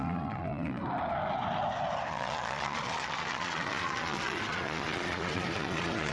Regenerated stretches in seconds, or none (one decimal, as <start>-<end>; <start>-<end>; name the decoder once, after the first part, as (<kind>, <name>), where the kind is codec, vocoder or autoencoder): 0.0-0.8 (vocoder, Vocos); 2.1-6.1